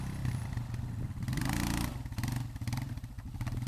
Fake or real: real